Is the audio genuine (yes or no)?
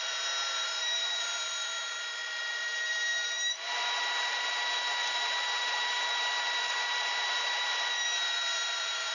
no